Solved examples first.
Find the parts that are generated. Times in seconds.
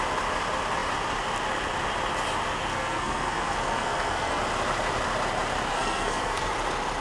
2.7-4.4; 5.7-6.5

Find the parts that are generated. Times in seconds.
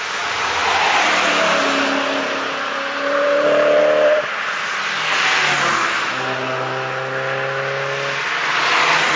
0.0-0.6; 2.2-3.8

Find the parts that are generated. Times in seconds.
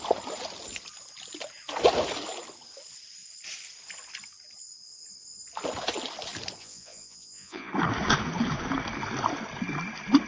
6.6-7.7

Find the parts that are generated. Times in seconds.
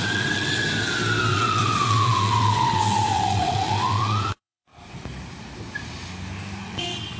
0.0-0.6; 1.3-4.7; 6.6-7.2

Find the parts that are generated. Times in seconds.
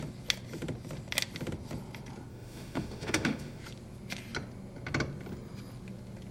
2.3-3.6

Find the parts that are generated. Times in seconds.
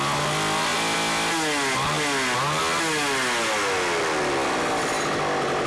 none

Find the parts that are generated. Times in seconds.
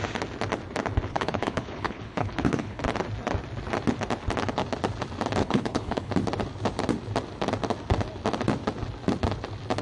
1.1-2.8; 5.4-6.1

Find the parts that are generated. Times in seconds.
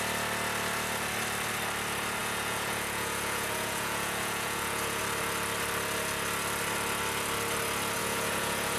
2.2-5.0; 8.0-8.8